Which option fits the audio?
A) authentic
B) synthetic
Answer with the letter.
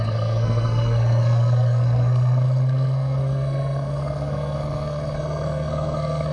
B